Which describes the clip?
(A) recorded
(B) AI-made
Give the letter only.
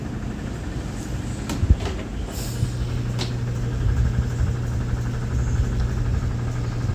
A